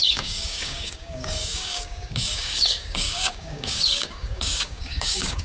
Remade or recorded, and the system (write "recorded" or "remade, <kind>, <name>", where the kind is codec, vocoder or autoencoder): remade, codec, DAC